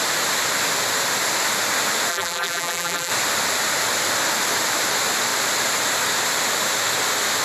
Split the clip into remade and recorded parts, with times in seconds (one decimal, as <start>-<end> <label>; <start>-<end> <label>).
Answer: 0.0-2.1 recorded; 2.1-3.1 remade; 3.1-7.4 recorded